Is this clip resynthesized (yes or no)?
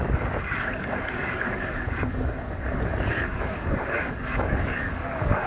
yes